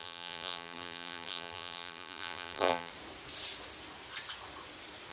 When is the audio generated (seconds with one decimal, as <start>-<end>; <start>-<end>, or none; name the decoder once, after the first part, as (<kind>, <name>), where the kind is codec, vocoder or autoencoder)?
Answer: 0.0-2.9 (vocoder, BigVGAN v2)

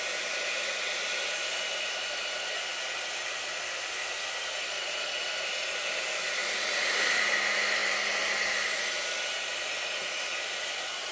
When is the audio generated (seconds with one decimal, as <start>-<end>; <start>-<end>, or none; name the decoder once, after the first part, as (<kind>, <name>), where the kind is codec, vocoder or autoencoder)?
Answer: none